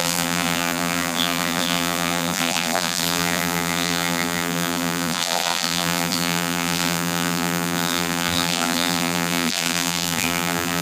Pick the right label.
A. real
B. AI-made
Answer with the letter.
B